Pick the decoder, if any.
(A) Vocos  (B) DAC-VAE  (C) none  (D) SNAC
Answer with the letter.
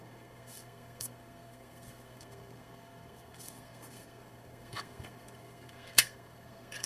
D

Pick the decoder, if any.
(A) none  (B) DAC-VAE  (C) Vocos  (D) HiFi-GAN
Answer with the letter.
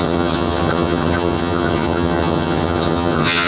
D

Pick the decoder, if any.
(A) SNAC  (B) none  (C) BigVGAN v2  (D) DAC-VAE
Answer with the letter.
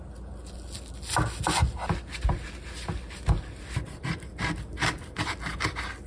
B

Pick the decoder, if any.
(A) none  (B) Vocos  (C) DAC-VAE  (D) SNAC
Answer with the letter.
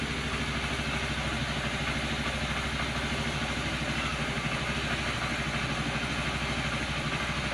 A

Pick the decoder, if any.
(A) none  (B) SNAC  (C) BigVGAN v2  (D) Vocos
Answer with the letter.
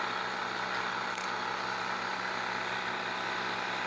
A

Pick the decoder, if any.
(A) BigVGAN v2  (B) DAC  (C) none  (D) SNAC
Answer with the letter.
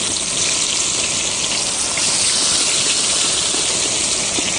C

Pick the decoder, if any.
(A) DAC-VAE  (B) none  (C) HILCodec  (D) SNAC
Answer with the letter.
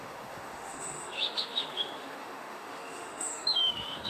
A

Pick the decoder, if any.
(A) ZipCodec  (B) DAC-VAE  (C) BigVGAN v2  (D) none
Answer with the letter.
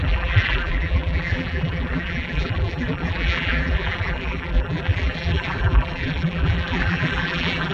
C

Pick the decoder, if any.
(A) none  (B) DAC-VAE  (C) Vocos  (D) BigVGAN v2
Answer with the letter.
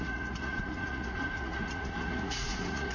C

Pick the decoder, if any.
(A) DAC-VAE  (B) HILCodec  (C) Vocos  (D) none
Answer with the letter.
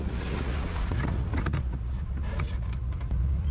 C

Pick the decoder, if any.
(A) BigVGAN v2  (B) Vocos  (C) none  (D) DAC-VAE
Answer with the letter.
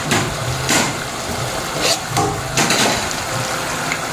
C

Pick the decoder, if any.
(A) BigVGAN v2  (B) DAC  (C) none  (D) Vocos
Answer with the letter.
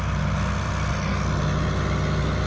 C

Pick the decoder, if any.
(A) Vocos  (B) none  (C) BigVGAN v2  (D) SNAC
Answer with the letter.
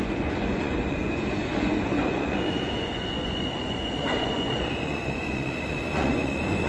A